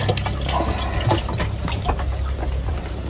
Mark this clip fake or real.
real